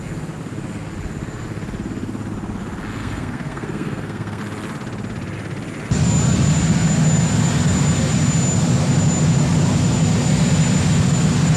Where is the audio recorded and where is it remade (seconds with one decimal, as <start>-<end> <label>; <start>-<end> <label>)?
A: 0.0-3.0 recorded; 3.0-4.4 remade; 4.4-11.6 recorded